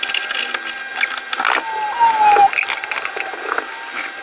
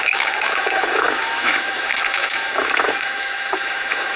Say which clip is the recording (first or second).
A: first